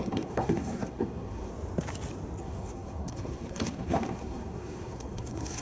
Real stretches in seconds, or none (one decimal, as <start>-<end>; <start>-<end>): 1.5-2.4